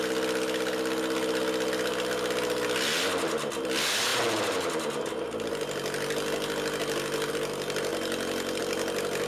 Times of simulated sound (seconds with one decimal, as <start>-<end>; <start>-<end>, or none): 7.9-8.6